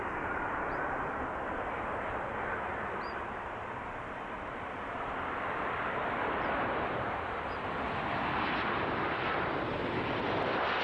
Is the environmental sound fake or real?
fake